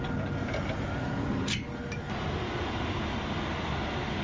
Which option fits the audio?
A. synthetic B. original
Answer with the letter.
B